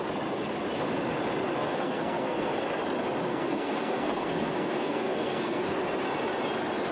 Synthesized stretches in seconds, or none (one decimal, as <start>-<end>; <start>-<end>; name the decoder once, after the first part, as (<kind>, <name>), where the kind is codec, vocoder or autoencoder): 1.7-2.6 (codec, SNAC); 3.3-5.6